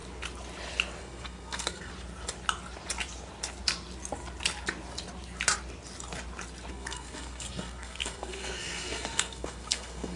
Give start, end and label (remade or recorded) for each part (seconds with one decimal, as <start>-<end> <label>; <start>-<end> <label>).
0.0-1.0 recorded; 1.0-1.9 remade; 1.9-6.7 recorded; 6.7-10.2 remade